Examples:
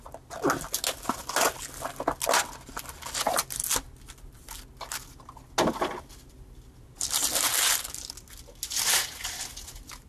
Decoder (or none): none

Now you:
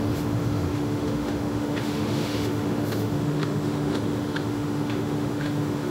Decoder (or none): autoencoder, DAC-VAE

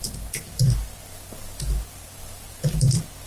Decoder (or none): none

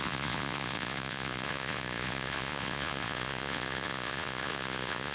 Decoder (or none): vocoder, Vocos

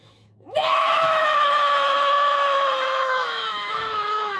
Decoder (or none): autoencoder, DAC-VAE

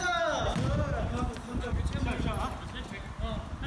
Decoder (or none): none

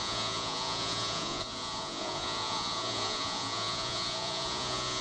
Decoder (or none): vocoder, Vocos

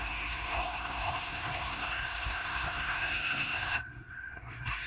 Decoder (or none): codec, SNAC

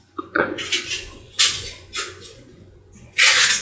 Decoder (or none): vocoder, Vocos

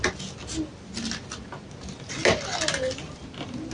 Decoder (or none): none